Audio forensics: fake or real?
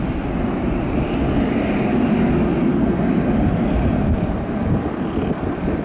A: real